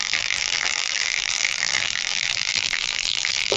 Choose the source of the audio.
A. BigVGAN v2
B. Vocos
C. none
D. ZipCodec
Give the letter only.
A